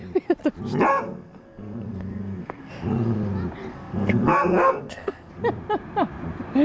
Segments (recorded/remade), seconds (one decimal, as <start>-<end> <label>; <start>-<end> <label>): 0.0-0.9 recorded; 0.9-2.7 remade; 2.7-3.7 recorded; 3.7-5.3 remade; 5.3-6.6 recorded